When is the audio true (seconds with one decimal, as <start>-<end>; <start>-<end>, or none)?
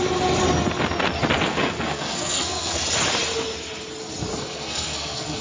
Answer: 0.0-1.5; 2.8-4.3